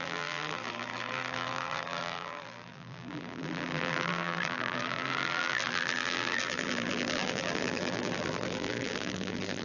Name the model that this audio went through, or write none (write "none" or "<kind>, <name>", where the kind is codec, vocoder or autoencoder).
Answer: vocoder, BigVGAN v2